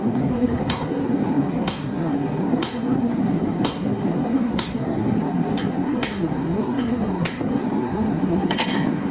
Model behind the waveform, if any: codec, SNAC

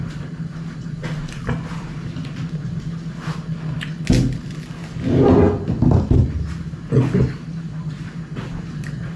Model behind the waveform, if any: none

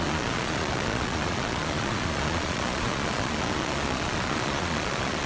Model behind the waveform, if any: vocoder, Vocos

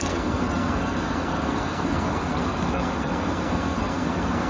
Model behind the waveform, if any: codec, SNAC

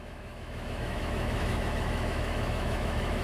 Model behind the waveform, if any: autoencoder, DAC-VAE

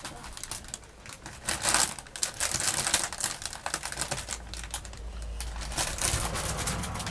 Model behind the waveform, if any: none